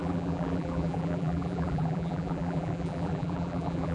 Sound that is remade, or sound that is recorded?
remade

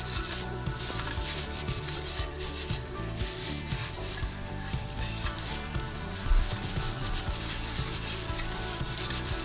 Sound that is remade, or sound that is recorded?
remade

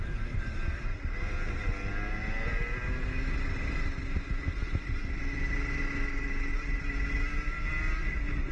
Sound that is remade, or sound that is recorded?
recorded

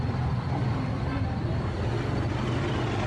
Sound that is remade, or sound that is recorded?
remade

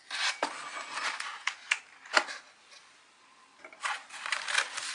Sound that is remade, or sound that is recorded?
recorded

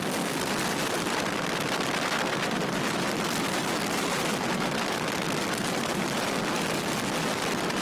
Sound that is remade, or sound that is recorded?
recorded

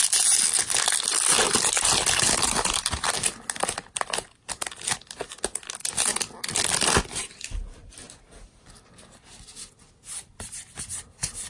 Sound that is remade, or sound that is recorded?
recorded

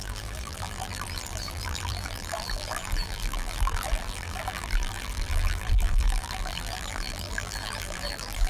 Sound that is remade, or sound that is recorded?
remade